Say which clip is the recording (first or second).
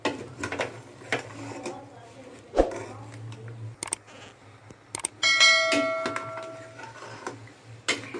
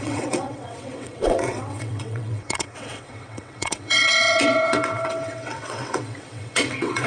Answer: first